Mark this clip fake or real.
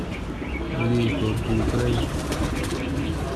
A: real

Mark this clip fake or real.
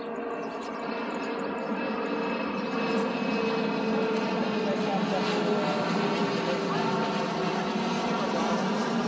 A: real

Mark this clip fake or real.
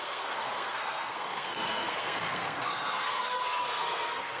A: fake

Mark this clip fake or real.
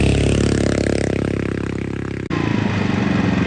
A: real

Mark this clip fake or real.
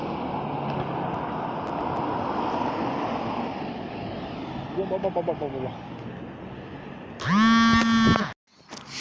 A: real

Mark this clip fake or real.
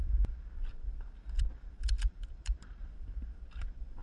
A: real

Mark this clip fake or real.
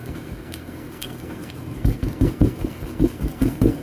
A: fake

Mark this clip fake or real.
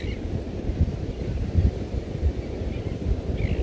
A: real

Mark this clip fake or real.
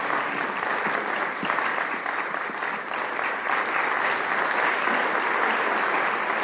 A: real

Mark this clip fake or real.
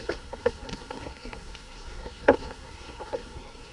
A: fake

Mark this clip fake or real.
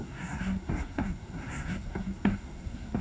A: fake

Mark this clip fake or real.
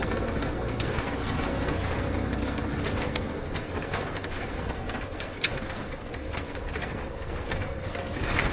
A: fake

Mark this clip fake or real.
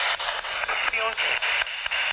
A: real